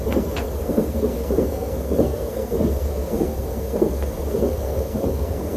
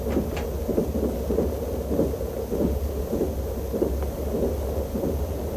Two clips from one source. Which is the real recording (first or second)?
second